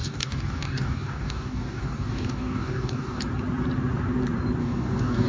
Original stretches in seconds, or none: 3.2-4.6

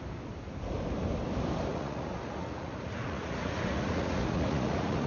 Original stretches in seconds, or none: 0.0-1.7

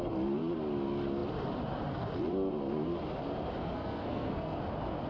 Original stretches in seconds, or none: 0.0-3.6; 4.6-5.1

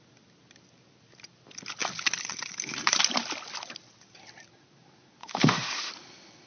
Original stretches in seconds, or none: 0.0-5.2; 5.9-6.5

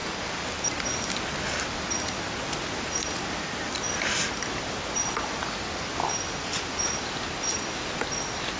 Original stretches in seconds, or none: 0.0-8.6